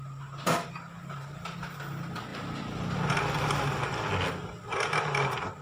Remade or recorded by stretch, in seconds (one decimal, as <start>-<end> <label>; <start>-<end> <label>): 0.0-5.6 recorded